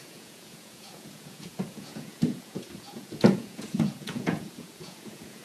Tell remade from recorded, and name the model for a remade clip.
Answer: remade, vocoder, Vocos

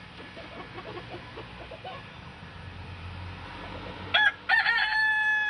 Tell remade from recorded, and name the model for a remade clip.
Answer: recorded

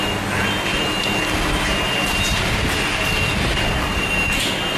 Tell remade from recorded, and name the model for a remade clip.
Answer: recorded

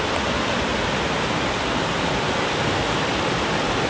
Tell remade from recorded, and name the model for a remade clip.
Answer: recorded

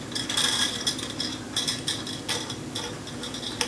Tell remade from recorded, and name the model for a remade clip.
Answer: recorded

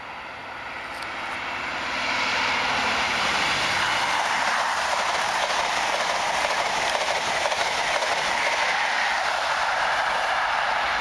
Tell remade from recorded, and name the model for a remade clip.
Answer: recorded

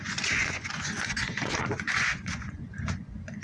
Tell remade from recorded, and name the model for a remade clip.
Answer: remade, vocoder, Vocos